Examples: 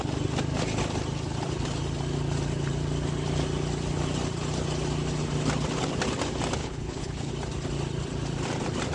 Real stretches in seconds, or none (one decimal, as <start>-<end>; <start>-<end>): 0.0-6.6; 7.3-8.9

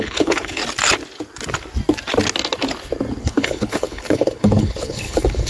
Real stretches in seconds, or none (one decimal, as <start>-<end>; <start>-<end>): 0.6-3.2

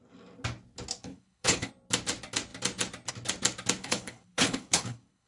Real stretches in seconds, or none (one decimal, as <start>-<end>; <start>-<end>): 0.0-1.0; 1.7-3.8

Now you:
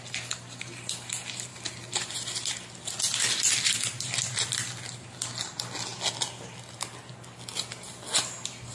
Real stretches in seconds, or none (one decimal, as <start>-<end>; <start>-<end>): 0.0-8.7